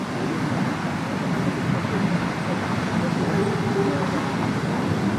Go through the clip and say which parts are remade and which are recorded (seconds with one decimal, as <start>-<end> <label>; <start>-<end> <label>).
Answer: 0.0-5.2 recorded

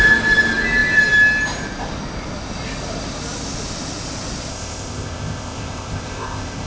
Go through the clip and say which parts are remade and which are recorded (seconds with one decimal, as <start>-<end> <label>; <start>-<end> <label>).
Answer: 0.0-4.5 recorded; 4.5-6.7 remade

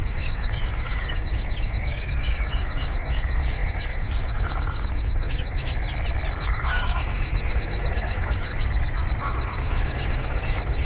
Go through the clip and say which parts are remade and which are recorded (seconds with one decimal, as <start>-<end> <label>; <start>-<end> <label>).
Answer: 0.0-5.7 remade; 5.7-6.4 recorded; 6.4-8.5 remade; 8.5-9.2 recorded; 9.2-10.8 remade

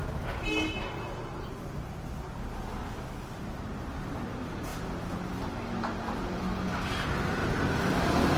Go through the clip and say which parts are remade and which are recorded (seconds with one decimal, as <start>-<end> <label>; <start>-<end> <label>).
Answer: 0.0-2.8 recorded; 2.8-4.7 remade; 4.7-6.4 recorded; 6.4-8.4 remade

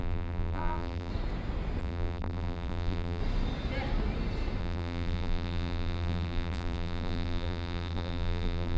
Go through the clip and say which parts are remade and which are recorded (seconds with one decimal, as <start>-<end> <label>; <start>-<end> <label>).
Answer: 0.0-1.1 remade; 1.1-1.8 recorded; 1.8-3.2 remade; 3.2-4.6 recorded; 4.6-8.8 remade

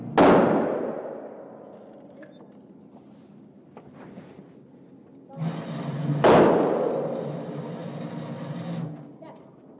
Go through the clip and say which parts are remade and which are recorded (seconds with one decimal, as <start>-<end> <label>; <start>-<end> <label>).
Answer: 0.0-9.8 recorded